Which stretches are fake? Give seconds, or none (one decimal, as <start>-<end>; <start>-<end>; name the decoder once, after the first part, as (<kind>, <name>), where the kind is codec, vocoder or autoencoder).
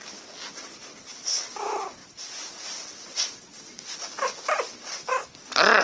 none